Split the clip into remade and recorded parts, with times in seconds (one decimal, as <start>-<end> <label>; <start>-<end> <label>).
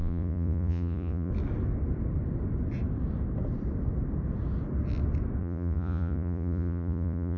0.0-1.3 remade; 1.3-5.4 recorded; 5.4-7.4 remade